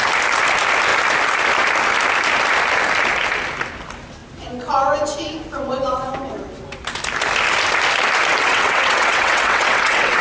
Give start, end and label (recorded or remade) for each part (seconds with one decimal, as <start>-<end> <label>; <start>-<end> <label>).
0.0-8.4 recorded; 8.4-10.2 remade